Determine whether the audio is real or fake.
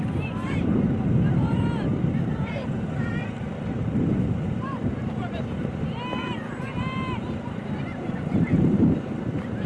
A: fake